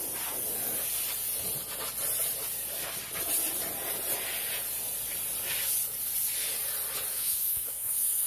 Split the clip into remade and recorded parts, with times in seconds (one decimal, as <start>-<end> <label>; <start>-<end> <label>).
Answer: 0.0-7.1 recorded; 7.1-8.3 remade